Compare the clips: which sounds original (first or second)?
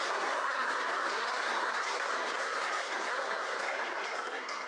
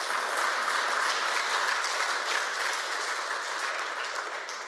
second